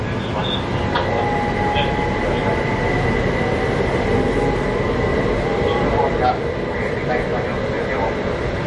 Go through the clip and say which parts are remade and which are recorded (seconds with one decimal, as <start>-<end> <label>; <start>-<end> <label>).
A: 0.0-5.5 recorded; 5.5-7.1 remade; 7.1-8.7 recorded